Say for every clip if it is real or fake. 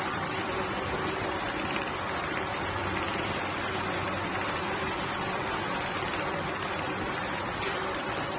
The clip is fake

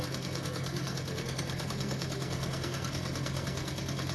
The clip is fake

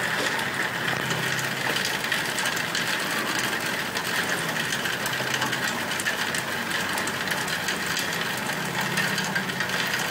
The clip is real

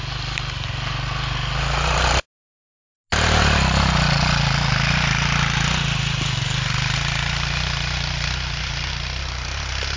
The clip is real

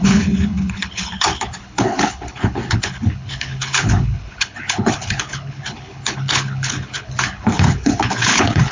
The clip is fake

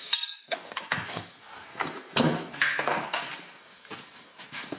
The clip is fake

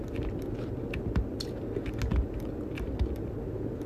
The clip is real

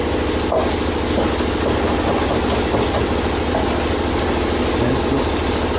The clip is real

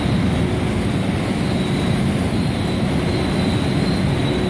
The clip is real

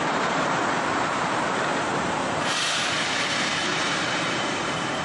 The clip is fake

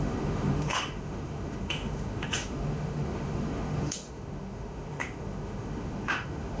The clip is fake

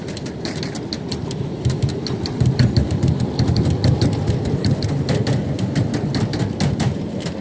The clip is fake